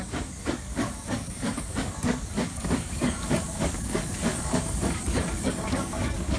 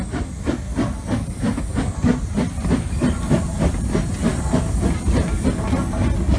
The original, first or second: second